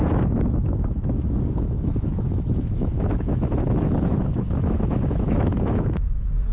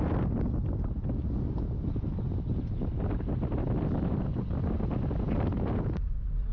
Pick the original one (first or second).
second